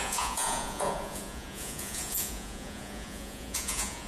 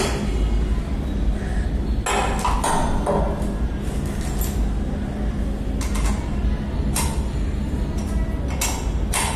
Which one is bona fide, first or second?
second